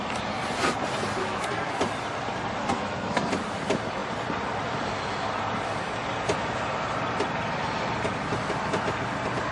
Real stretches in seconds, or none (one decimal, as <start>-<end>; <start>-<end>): 0.0-1.2; 1.8-2.6; 3.3-9.5